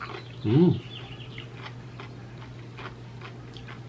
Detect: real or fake real